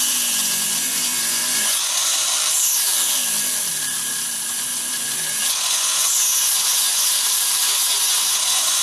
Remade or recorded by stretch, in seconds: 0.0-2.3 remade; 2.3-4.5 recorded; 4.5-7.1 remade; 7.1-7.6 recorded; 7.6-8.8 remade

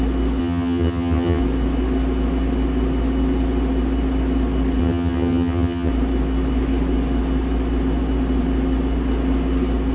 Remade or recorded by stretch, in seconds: 0.0-0.4 recorded; 0.4-1.4 remade; 1.4-4.8 recorded; 4.8-5.9 remade; 5.9-9.9 recorded

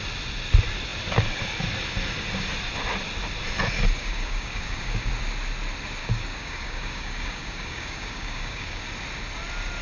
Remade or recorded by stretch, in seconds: 0.0-4.0 recorded; 4.0-5.1 remade; 5.1-6.0 recorded; 6.0-8.8 remade; 8.8-9.8 recorded

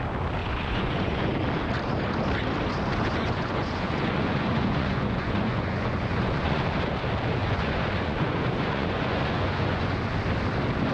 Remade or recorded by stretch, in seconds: 0.0-0.4 recorded; 0.4-1.3 remade; 1.3-2.9 recorded; 2.9-6.6 remade; 6.6-7.4 recorded; 7.4-10.2 remade; 10.2-10.9 recorded